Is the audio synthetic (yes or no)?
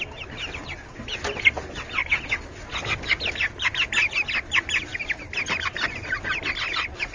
no